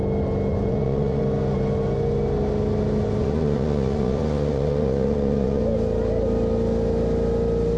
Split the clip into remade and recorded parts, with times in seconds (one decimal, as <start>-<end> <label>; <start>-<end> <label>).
0.0-0.5 recorded; 0.5-1.2 remade; 1.2-3.2 recorded; 3.2-5.6 remade; 5.6-7.8 recorded